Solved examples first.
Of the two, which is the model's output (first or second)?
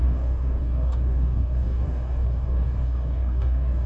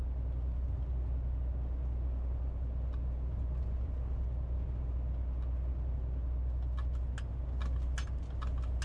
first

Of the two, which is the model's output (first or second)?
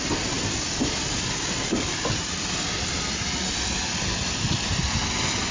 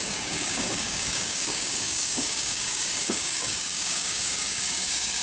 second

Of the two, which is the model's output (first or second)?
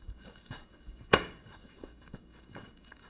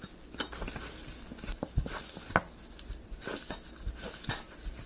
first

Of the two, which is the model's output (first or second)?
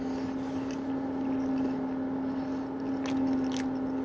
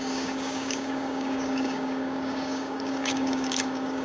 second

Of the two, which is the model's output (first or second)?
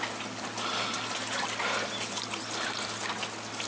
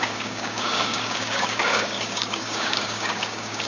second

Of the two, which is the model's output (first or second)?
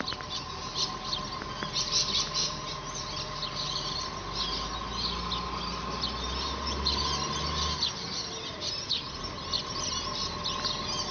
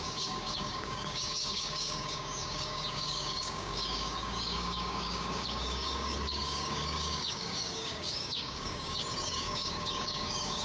second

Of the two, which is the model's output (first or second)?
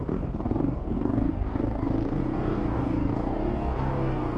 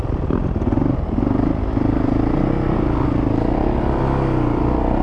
first